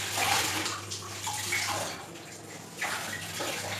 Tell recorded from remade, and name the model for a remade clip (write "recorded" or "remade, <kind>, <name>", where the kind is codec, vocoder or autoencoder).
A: recorded